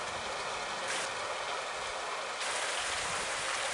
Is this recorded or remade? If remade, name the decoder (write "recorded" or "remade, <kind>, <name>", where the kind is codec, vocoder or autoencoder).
recorded